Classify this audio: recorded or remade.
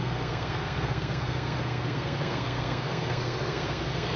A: remade